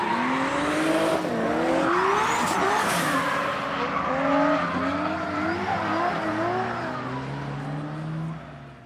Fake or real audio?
real